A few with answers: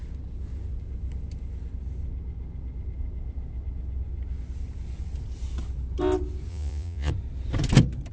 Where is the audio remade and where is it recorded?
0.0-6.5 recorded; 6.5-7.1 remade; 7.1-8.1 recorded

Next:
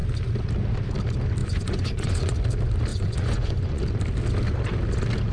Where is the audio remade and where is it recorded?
0.0-1.4 recorded; 1.4-2.3 remade; 2.3-2.9 recorded; 2.9-3.8 remade; 3.8-5.3 recorded

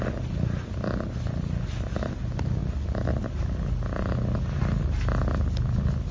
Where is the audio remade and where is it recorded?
0.0-6.1 recorded

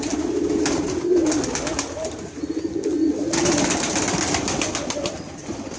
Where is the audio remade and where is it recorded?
0.0-5.8 recorded

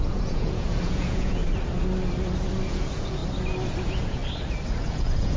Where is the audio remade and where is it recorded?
0.0-1.4 remade; 1.4-2.7 recorded; 2.7-3.2 remade; 3.2-3.8 recorded; 3.8-4.2 remade; 4.2-4.9 recorded; 4.9-5.4 remade

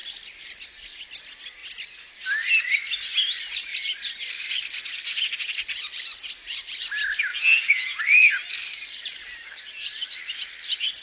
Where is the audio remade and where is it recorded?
0.0-7.3 recorded; 7.3-8.0 remade; 8.0-11.0 recorded

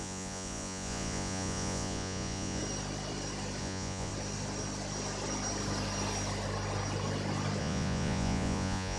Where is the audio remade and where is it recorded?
0.0-2.6 remade; 2.6-3.6 recorded; 3.6-4.1 remade; 4.1-7.6 recorded; 7.6-9.0 remade

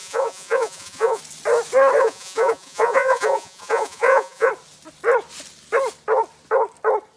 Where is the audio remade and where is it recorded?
0.0-1.2 remade; 1.2-2.0 recorded; 2.0-4.5 remade; 4.5-7.2 recorded